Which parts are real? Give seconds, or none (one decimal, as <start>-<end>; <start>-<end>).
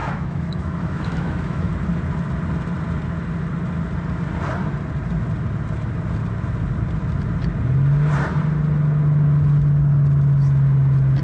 1.7-11.2